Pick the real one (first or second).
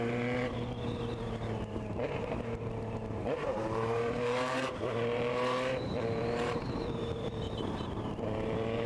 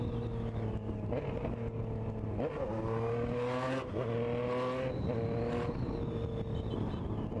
second